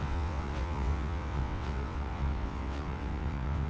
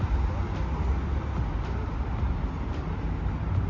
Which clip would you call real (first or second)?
second